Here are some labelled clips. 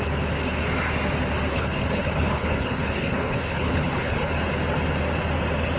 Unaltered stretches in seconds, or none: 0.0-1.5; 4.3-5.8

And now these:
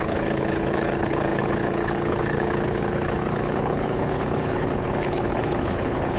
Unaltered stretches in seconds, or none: none

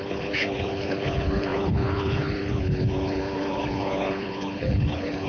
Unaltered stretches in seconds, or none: none

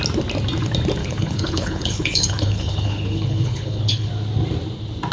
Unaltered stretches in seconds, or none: 0.0-1.0; 4.1-5.1